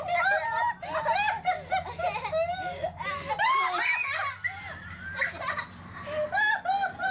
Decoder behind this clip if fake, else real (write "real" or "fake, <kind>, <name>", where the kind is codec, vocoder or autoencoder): real